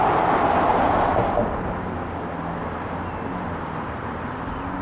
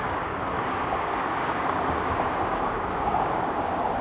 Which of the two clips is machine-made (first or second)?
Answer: second